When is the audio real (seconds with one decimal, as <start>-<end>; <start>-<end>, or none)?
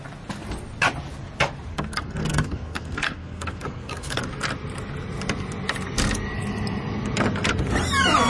0.0-1.7; 4.2-8.3